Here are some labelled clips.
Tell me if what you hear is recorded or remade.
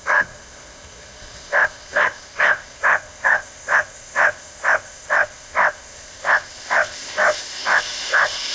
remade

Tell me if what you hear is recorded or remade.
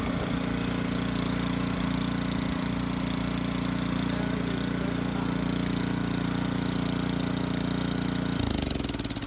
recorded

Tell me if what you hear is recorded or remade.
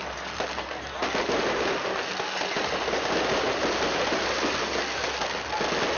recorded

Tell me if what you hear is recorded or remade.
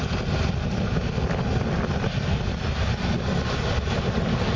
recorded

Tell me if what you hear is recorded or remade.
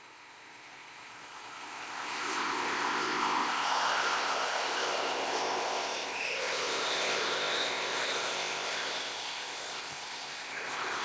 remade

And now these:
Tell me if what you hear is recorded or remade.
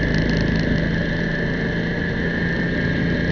recorded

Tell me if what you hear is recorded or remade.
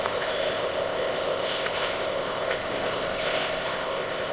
remade